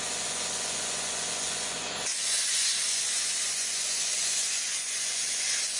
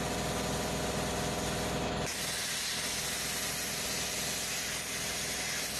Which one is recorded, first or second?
second